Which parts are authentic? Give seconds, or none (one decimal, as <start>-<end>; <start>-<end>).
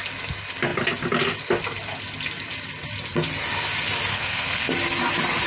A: 0.0-4.1; 4.7-5.5